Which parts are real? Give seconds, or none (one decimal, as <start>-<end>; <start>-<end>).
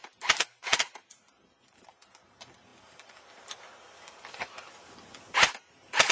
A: none